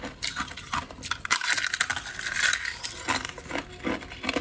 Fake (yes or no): no